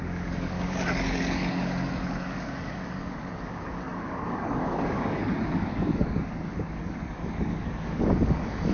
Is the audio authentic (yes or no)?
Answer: no